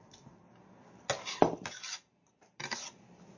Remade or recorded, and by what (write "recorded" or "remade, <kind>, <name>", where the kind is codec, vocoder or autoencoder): recorded